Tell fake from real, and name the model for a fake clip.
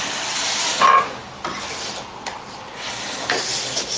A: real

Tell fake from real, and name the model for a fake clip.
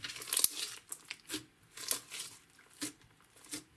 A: real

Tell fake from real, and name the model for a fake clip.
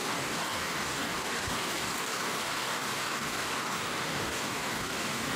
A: fake, codec, DAC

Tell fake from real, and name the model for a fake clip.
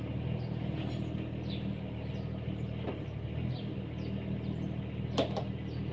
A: real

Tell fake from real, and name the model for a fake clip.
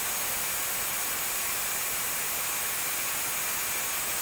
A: real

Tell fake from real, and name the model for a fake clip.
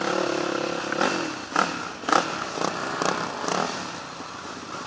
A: real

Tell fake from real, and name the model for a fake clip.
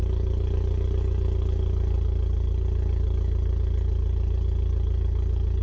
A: real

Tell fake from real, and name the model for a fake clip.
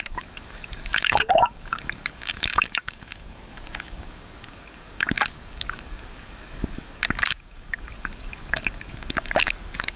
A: fake, codec, DAC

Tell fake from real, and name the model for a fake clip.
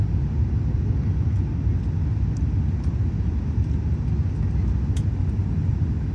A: real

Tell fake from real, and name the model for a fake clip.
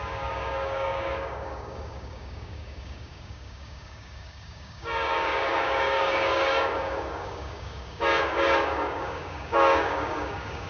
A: fake, codec, DAC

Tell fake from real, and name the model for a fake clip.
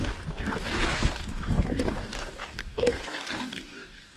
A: fake, codec, DAC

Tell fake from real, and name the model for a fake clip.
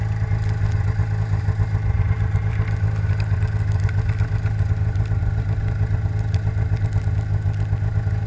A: real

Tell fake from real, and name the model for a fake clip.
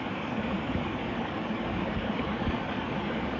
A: fake, codec, DAC